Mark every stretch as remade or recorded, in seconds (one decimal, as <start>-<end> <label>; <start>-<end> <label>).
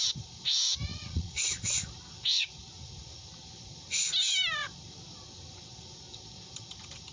0.0-0.9 recorded; 0.9-1.6 remade; 1.6-7.1 recorded